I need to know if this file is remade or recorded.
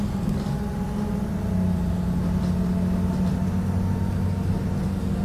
recorded